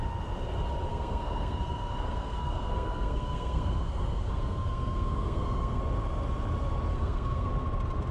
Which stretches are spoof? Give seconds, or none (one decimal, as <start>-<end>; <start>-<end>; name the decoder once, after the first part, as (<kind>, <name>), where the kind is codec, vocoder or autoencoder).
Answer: 0.9-5.8 (codec, SNAC); 6.9-7.5